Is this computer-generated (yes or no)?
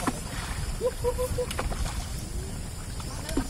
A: yes